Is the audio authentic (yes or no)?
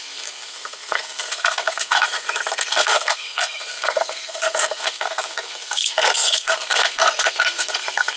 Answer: no